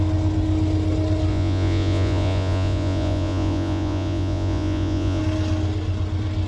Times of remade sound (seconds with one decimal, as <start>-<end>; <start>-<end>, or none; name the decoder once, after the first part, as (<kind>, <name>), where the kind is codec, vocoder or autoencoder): 1.3-5.2 (vocoder, Vocos)